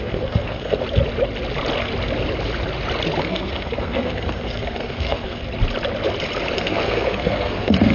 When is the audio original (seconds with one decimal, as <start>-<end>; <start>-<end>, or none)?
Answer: 0.8-3.2; 5.4-6.6